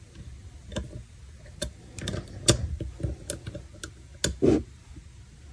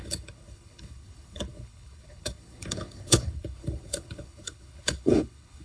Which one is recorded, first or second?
first